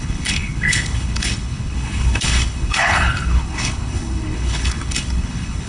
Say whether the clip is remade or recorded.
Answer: remade